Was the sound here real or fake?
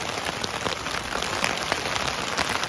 real